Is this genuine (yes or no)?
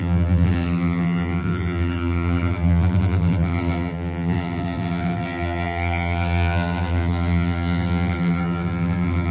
no